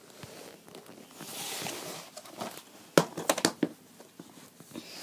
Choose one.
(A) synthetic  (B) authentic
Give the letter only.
B